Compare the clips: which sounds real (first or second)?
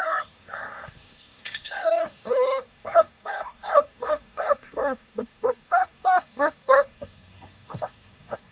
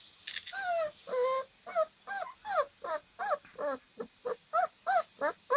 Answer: second